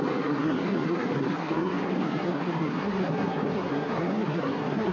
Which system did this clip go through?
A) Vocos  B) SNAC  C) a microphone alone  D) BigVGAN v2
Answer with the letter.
B